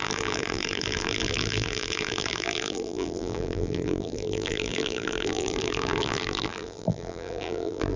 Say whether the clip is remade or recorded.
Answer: remade